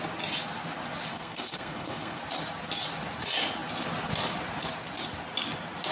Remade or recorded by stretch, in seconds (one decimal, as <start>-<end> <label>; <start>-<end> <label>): 0.0-1.1 recorded; 1.1-2.2 remade; 2.2-5.9 recorded